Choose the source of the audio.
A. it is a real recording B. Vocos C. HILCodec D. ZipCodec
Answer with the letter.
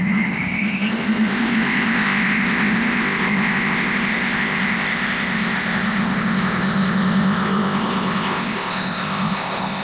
D